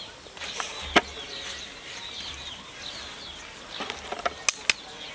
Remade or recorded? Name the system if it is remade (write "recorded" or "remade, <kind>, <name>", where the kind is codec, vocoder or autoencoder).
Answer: recorded